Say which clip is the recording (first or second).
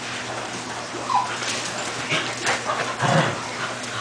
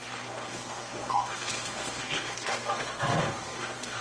first